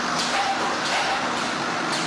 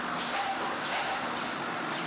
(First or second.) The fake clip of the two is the second